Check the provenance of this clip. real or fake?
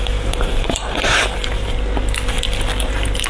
real